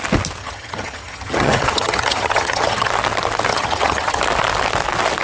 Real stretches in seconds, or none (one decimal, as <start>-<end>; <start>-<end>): 0.0-0.4; 2.9-3.5; 4.2-5.2